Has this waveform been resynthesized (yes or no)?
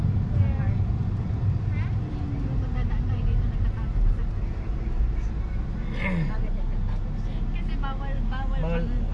no